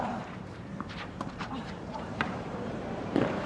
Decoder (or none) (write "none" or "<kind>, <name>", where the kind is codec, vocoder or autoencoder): vocoder, BigVGAN v2